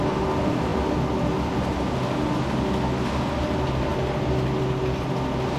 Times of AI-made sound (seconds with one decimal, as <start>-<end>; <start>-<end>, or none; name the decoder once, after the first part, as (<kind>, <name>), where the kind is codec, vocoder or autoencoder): none